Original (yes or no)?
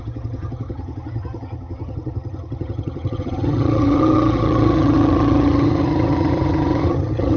no